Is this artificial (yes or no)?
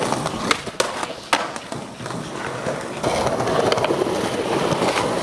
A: no